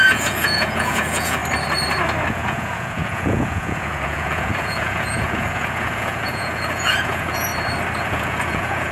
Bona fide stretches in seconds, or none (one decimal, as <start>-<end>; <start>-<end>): 1.4-2.3; 7.5-8.0